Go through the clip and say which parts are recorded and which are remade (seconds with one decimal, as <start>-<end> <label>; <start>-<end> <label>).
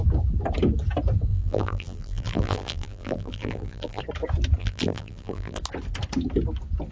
0.0-1.3 recorded; 1.3-4.0 remade; 4.0-4.6 recorded; 4.6-5.6 remade; 5.6-6.9 recorded